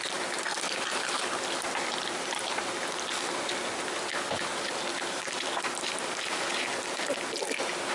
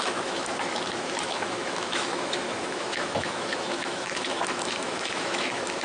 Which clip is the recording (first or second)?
first